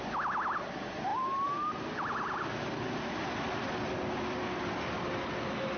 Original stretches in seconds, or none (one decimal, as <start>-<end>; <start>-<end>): 0.0-5.8